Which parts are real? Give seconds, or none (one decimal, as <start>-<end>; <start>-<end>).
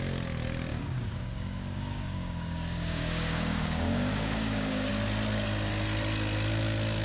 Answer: 0.0-0.7; 4.9-7.0